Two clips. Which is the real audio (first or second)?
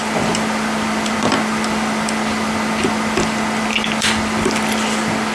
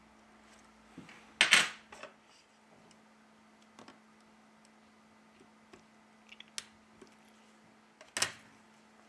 second